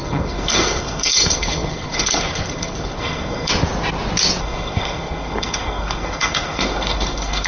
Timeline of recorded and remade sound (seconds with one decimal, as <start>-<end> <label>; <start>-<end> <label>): 0.0-3.5 remade; 3.5-4.4 recorded; 4.4-7.5 remade